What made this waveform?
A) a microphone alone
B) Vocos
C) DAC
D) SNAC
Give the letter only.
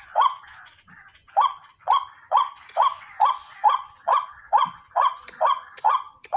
B